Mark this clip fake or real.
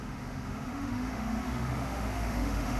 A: fake